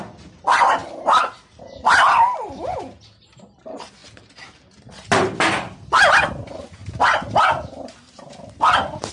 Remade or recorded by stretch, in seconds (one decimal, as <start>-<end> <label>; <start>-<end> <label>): 0.0-9.1 recorded